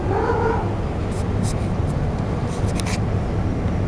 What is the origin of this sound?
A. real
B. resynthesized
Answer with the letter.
A